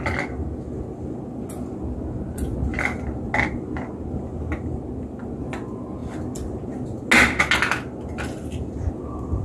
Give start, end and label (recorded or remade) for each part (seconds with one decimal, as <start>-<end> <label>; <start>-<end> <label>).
0.0-9.4 recorded